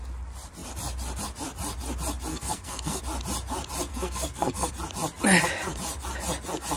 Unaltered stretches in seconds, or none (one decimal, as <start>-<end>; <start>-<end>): 0.0-2.3; 3.0-3.9; 4.7-6.8